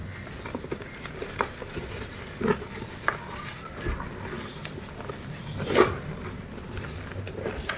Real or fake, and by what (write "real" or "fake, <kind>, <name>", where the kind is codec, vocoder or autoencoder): real